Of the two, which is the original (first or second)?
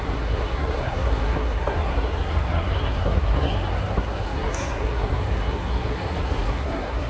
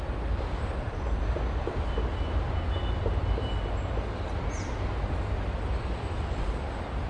second